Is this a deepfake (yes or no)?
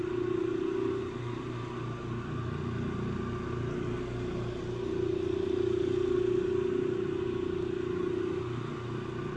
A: no